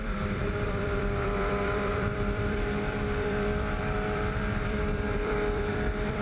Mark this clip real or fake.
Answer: fake